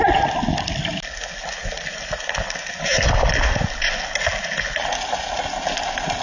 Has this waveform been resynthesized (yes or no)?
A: no